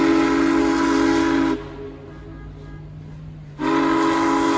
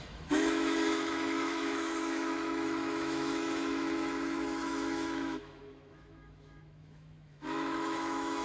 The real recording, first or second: first